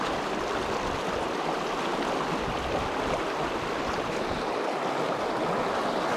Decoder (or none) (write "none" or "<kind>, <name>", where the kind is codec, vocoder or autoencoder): none